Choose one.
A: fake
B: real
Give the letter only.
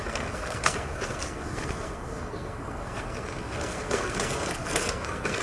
A